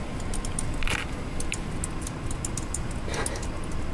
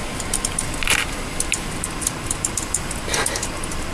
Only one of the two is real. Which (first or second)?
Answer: first